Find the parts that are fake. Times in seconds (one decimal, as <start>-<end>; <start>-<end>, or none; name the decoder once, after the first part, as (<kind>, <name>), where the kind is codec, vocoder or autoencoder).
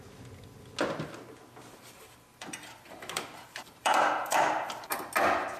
1.7-5.1 (vocoder, BigVGAN v2)